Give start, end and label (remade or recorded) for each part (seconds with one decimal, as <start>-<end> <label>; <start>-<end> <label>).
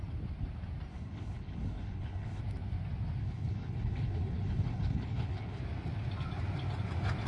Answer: 0.0-0.9 recorded; 0.9-2.4 remade; 2.4-3.2 recorded; 3.2-5.6 remade; 5.6-7.3 recorded